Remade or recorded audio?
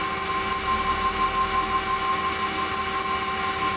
recorded